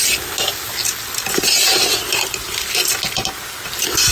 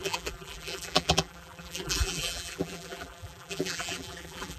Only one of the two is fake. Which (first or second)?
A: second